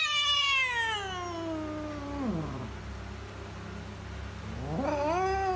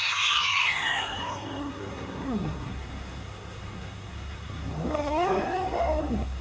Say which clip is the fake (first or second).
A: second